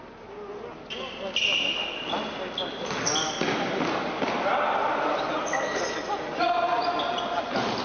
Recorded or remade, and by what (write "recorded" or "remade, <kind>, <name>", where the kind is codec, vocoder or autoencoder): recorded